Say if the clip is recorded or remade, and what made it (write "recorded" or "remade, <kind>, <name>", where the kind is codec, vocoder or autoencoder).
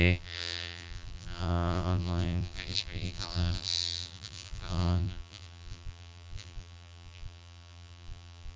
remade, vocoder, BigVGAN v2